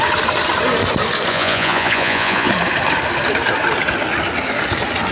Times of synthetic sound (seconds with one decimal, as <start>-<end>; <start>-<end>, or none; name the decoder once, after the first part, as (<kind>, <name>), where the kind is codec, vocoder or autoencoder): 1.3-2.5 (vocoder, Vocos)